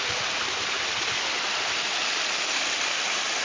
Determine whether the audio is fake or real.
real